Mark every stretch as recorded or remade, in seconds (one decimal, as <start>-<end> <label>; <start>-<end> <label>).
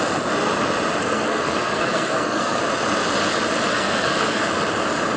0.0-1.0 recorded; 1.0-2.6 remade; 2.6-3.7 recorded; 3.7-4.4 remade; 4.4-5.2 recorded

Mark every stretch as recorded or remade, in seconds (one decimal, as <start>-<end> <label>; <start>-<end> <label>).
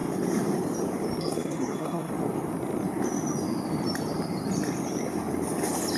0.0-1.2 recorded; 1.2-2.1 remade; 2.1-6.0 recorded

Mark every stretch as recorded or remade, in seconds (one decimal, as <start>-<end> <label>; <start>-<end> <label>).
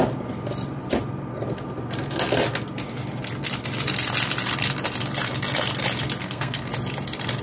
0.0-6.2 recorded; 6.2-6.7 remade; 6.7-7.4 recorded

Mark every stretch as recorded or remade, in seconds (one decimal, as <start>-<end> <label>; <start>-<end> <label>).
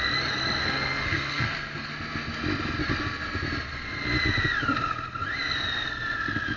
0.0-0.6 recorded; 0.6-1.9 remade; 1.9-6.6 recorded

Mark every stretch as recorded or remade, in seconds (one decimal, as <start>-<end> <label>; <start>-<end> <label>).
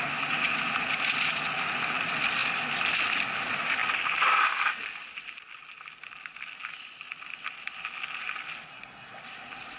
0.0-8.7 recorded; 8.7-9.2 remade; 9.2-9.8 recorded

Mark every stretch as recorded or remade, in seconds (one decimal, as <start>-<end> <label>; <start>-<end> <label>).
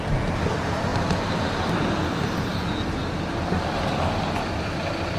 0.0-5.2 recorded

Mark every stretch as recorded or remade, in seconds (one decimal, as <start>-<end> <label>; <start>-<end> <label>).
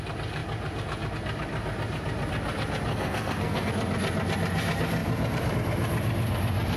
0.0-2.9 recorded; 2.9-3.7 remade; 3.7-6.8 recorded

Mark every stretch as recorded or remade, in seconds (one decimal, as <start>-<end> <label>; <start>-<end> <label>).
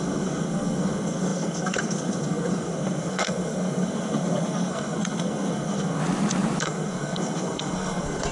0.0-6.0 remade; 6.0-6.6 recorded; 6.6-8.3 remade